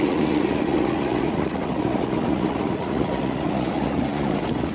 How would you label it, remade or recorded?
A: remade